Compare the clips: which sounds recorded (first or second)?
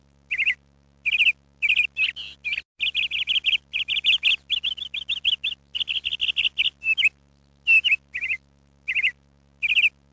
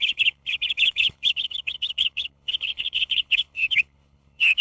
first